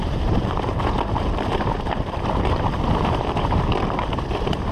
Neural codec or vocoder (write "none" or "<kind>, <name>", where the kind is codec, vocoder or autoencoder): vocoder, BigVGAN v2